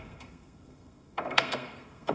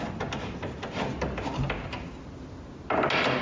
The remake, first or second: first